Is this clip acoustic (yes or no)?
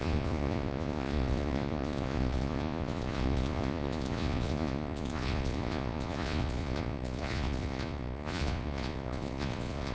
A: no